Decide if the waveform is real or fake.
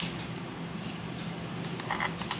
real